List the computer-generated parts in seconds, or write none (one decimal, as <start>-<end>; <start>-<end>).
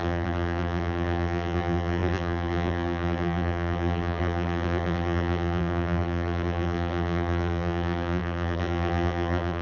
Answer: 0.0-9.6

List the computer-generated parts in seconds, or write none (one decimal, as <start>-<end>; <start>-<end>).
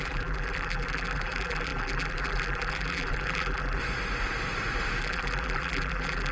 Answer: 0.0-3.8; 5.0-6.3